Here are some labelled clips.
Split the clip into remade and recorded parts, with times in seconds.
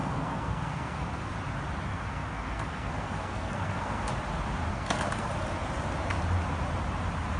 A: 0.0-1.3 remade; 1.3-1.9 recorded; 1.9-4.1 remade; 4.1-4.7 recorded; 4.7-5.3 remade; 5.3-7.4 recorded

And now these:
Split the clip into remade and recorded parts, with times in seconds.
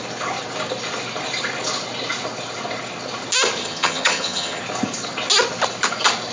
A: 0.0-3.6 recorded; 3.6-4.6 remade; 4.6-6.3 recorded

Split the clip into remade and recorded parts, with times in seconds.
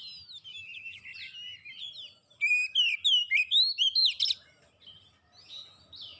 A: 0.0-0.5 recorded; 0.5-1.0 remade; 1.0-6.2 recorded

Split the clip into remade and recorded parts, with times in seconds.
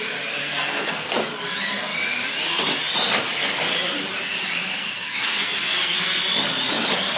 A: 0.0-0.4 recorded; 0.4-1.3 remade; 1.3-4.7 recorded; 4.7-6.2 remade; 6.2-7.2 recorded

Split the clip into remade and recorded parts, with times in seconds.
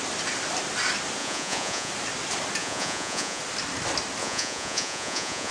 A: 0.0-1.2 recorded; 1.2-1.9 remade; 1.9-2.6 recorded; 2.6-3.4 remade; 3.4-4.2 recorded; 4.2-5.5 remade